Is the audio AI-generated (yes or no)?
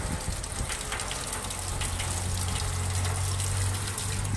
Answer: no